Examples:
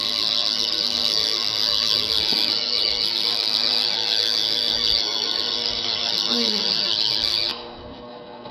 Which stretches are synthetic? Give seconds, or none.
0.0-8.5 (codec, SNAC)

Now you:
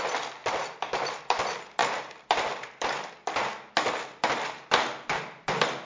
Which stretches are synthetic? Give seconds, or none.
0.4-1.4 (vocoder, BigVGAN v2); 1.8-3.1

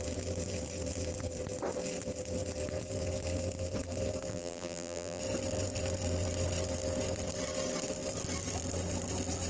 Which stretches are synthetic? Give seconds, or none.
4.3-5.2 (vocoder, BigVGAN v2)

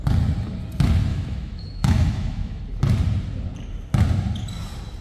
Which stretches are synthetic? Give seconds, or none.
1.1-2.6 (autoencoder, DAC-VAE)

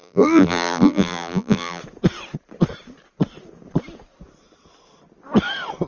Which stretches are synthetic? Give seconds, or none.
0.0-1.8 (vocoder, BigVGAN v2)

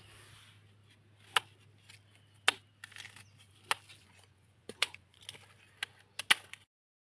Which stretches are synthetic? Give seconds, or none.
4.0-5.2 (vocoder, Vocos)

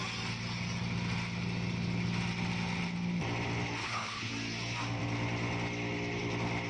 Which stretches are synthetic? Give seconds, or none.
3.8-4.3 (codec, HILCodec)

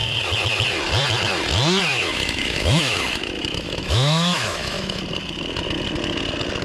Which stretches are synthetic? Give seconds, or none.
1.9-5.0 (autoencoder, DAC-VAE)